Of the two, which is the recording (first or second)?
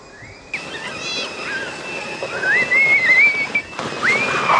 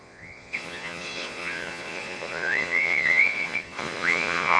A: first